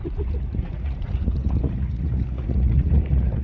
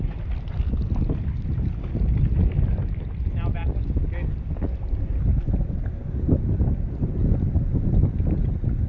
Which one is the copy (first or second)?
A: first